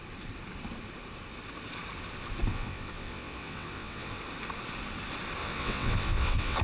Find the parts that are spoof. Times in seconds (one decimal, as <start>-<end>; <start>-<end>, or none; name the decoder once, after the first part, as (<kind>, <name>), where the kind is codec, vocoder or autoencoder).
2.5-4.2 (vocoder, WaveNeXt); 5.4-6.6